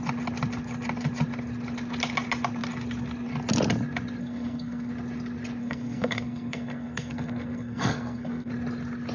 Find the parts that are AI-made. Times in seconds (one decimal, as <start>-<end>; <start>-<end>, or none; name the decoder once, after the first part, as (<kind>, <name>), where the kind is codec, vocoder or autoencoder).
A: 4.2-4.9 (codec, SNAC); 5.6-8.5